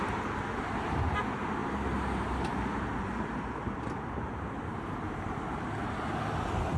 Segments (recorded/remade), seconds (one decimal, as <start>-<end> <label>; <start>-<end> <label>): 0.0-1.6 recorded; 1.6-5.7 remade; 5.7-6.8 recorded